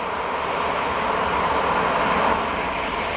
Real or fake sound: real